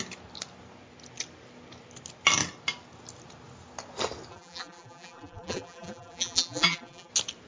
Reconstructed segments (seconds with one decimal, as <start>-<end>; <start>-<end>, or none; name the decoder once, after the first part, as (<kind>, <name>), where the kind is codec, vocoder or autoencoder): 4.3-7.1 (vocoder, BigVGAN v2)